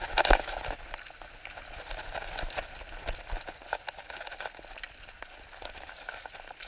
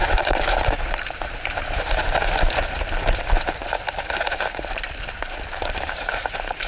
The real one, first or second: first